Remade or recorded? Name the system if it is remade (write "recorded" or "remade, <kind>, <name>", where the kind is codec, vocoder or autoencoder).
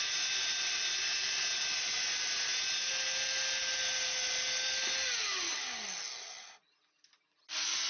recorded